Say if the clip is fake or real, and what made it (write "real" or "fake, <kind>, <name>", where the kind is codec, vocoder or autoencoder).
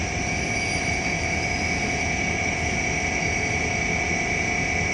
real